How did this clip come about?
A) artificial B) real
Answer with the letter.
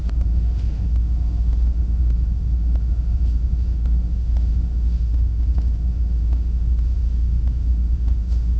A